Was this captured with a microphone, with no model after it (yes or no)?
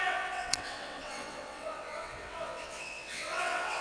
no